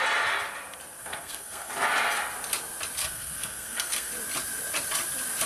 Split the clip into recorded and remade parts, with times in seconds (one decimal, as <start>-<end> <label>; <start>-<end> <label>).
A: 0.0-1.0 recorded; 1.0-1.7 remade; 1.7-3.0 recorded; 3.0-4.1 remade; 4.1-5.5 recorded